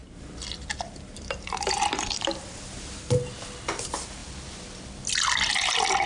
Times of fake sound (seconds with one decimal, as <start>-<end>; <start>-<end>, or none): 0.0-3.1